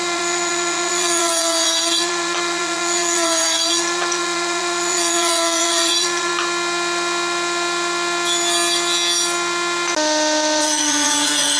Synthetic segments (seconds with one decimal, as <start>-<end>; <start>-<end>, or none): 0.0-6.3; 10.6-11.6